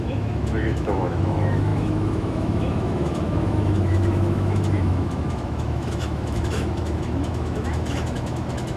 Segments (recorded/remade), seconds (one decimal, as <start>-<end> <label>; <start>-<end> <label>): 0.0-8.8 remade